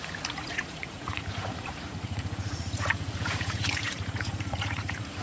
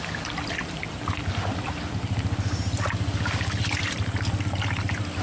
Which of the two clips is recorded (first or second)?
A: second